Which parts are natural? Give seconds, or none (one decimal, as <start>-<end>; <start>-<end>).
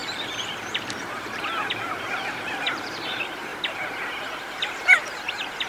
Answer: 3.5-4.3